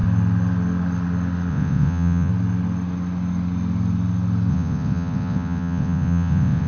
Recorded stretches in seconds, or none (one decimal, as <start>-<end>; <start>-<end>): 0.0-1.5; 2.3-4.5